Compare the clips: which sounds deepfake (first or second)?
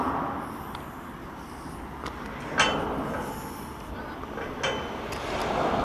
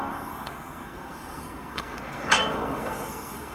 second